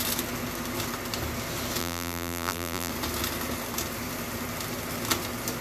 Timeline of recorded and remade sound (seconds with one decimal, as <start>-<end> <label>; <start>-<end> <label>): 0.0-1.8 recorded; 1.8-2.9 remade; 2.9-5.6 recorded